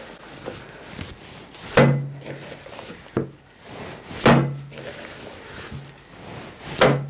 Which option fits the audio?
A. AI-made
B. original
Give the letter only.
B